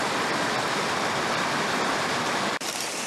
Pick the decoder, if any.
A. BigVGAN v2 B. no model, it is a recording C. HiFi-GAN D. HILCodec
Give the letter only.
A